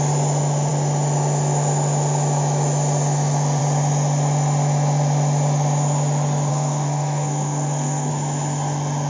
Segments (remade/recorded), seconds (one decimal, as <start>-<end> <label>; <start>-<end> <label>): 0.0-6.5 recorded; 6.5-8.1 remade; 8.1-9.1 recorded